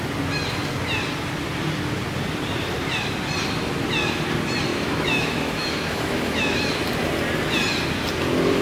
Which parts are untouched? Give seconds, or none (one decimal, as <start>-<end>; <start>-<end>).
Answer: 0.0-4.7; 6.8-8.6